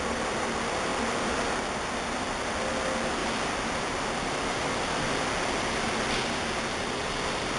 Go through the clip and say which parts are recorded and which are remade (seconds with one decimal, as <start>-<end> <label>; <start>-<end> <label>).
0.0-0.9 recorded; 0.9-2.5 remade; 2.5-3.2 recorded; 3.2-5.2 remade; 5.2-7.6 recorded